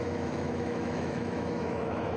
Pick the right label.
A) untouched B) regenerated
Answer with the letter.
B